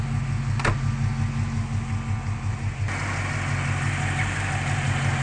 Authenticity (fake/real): real